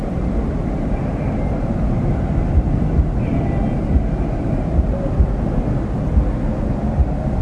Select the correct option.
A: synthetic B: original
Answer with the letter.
B